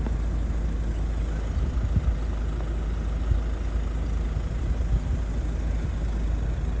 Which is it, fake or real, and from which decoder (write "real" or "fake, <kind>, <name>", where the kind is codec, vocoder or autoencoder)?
real